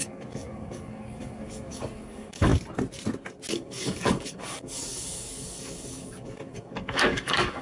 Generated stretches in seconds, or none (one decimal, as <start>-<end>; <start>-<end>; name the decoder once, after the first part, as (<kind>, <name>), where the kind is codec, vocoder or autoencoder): 0.0-2.5 (codec, DAC); 3.5-7.6